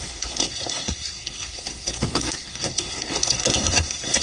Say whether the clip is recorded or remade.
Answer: remade